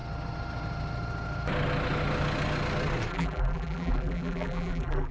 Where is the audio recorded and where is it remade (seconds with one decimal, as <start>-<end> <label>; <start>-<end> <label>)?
0.0-3.1 recorded; 3.1-5.1 remade